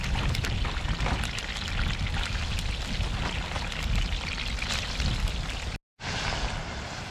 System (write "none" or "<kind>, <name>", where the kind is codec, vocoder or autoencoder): none